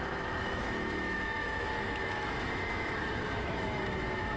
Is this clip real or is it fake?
fake